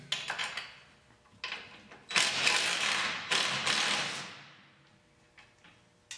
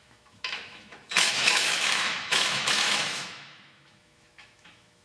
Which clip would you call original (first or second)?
first